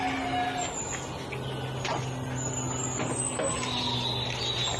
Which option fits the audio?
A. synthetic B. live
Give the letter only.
B